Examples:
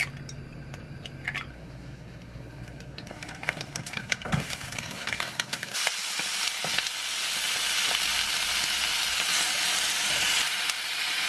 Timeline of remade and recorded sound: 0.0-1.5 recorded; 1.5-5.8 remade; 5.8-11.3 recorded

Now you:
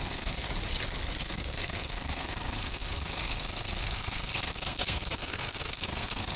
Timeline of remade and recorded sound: 0.0-0.5 remade; 0.5-1.2 recorded; 1.2-6.4 remade

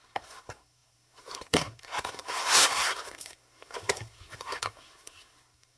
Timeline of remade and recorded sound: 0.0-5.8 remade

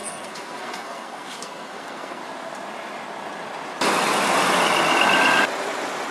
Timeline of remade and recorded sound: 0.0-2.2 remade; 2.2-6.1 recorded